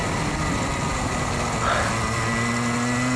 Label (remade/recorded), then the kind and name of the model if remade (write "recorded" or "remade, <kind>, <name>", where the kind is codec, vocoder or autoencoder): recorded